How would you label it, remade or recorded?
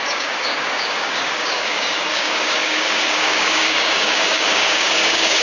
remade